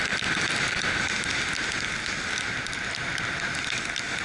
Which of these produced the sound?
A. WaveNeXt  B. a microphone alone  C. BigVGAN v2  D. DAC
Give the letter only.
B